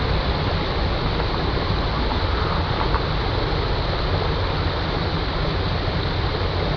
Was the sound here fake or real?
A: real